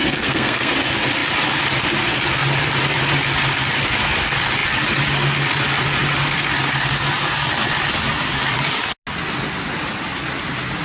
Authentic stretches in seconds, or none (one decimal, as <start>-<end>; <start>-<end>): 0.7-10.8